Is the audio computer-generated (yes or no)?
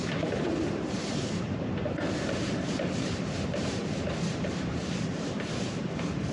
yes